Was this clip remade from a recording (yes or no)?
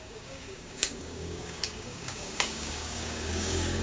yes